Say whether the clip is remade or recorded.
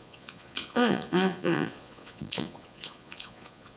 remade